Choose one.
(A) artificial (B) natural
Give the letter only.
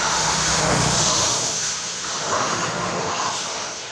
A